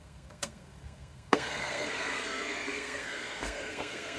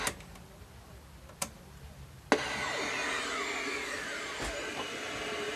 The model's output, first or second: first